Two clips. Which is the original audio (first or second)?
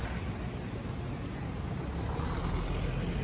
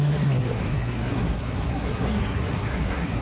first